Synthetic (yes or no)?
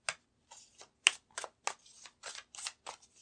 no